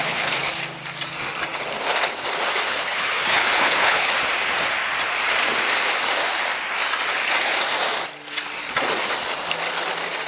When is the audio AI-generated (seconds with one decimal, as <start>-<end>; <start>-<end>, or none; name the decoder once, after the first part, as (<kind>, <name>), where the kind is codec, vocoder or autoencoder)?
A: 0.0-0.6 (codec, HILCodec); 2.7-4.1